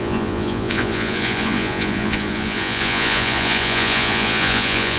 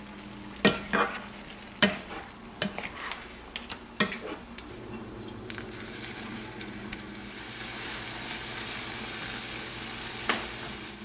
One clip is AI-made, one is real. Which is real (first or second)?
second